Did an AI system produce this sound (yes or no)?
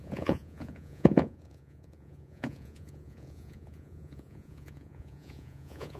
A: yes